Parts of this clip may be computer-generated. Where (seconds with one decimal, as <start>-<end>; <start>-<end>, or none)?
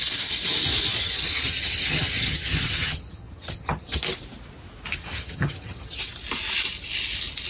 1.0-4.0; 5.0-6.0